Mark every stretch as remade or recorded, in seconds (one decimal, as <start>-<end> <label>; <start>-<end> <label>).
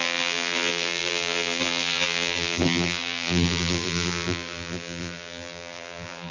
0.0-6.3 remade